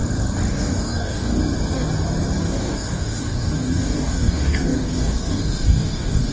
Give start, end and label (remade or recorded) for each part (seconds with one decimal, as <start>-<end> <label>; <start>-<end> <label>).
0.0-0.5 recorded; 0.5-1.4 remade; 1.4-2.4 recorded; 2.4-6.3 remade